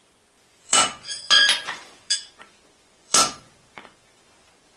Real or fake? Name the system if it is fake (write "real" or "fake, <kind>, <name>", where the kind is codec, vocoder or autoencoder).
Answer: fake, vocoder, Vocos